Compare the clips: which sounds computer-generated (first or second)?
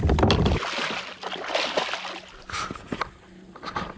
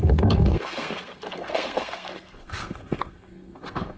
second